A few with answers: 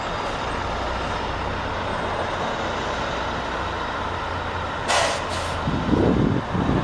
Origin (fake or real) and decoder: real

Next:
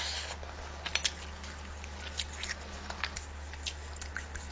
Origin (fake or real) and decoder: real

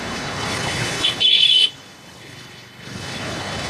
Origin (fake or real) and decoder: fake, codec, HILCodec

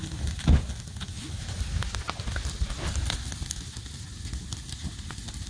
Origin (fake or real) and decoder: real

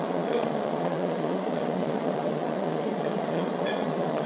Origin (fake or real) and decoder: fake, vocoder, Vocos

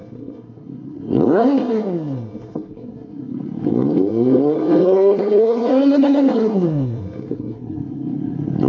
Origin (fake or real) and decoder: fake, codec, SNAC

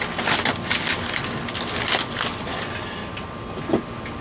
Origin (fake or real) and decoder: real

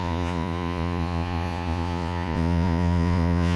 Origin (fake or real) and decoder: fake, vocoder, Vocos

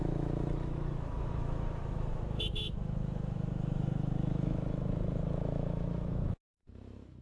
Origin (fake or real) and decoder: fake, autoencoder, DAC-VAE